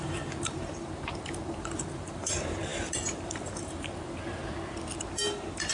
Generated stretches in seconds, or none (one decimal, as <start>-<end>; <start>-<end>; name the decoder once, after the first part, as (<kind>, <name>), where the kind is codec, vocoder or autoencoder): 0.0-4.4 (vocoder, BigVGAN v2); 5.0-5.7